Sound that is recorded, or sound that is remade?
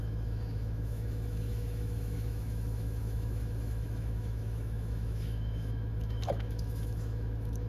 remade